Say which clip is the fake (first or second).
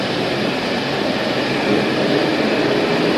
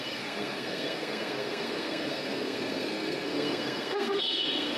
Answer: second